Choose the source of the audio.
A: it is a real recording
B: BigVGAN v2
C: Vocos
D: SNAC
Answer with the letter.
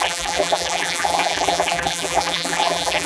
B